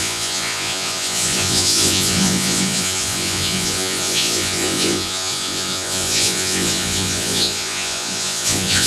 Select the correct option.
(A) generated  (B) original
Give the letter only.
A